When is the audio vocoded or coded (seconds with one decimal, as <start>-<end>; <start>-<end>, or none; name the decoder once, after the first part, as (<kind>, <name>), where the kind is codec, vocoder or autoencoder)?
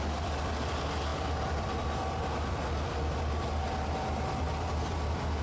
1.1-3.2 (vocoder, BigVGAN v2)